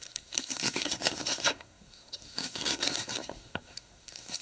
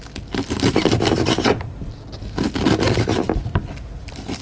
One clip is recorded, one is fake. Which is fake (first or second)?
first